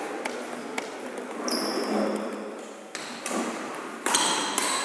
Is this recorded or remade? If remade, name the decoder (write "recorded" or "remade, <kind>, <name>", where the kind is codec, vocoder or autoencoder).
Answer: recorded